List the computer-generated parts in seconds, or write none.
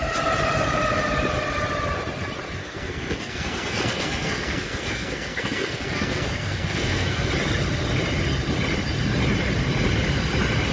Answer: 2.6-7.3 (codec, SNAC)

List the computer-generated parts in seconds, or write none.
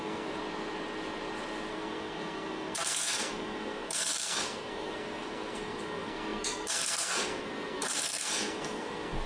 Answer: 0.0-0.4 (codec, SNAC); 1.7-9.3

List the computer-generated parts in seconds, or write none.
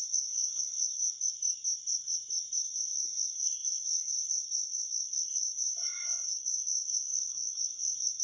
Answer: 0.0-1.0 (codec, SNAC); 2.6-8.2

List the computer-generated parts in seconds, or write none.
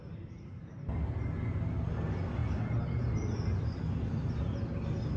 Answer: none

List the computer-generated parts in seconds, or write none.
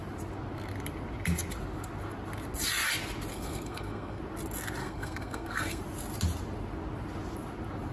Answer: 3.3-4.2 (codec, SNAC); 4.8-5.8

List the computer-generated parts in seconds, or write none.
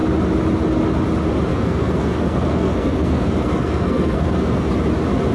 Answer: 1.5-4.7 (codec, SNAC)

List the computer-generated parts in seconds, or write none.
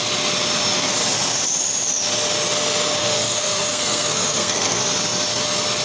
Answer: 3.0-4.8 (codec, SNAC)